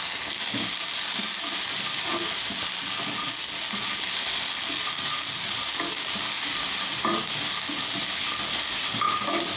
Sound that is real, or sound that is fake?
real